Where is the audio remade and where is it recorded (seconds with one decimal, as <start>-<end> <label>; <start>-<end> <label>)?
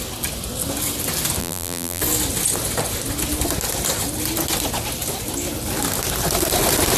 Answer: 0.0-1.4 recorded; 1.4-2.0 remade; 2.0-7.0 recorded